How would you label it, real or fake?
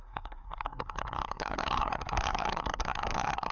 fake